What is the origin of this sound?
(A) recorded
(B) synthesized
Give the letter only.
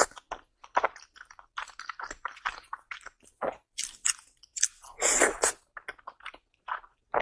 A